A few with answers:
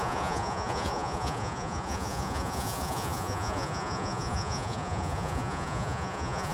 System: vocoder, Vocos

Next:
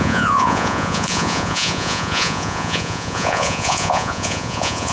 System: vocoder, Vocos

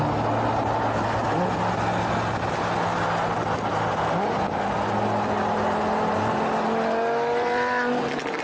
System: none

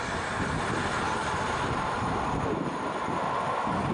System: none